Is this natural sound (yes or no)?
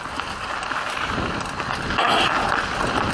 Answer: yes